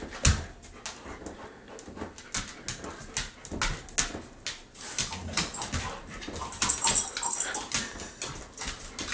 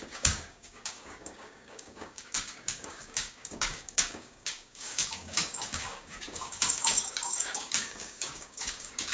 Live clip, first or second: first